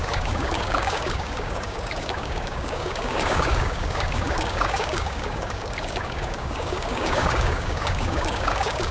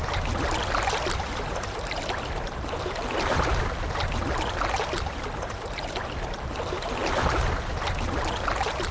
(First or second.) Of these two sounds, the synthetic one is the first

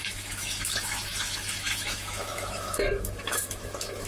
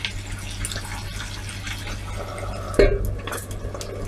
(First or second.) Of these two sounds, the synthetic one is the first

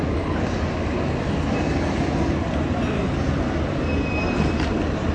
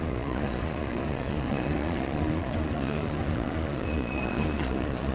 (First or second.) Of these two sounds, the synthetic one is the second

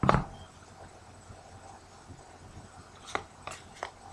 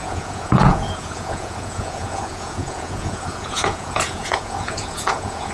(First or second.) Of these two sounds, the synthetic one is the second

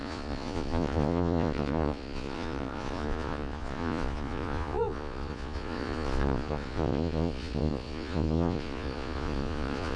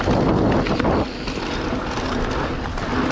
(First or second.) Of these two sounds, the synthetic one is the first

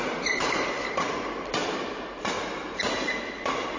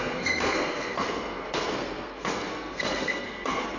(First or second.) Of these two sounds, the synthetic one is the second